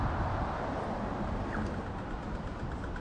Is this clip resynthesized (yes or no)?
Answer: no